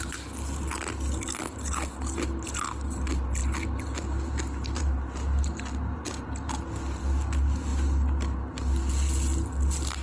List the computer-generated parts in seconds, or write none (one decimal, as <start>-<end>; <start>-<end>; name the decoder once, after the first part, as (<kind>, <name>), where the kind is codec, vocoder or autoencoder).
none